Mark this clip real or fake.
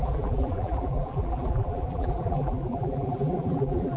fake